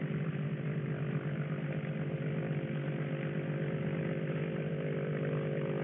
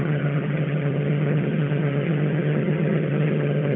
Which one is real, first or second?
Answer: first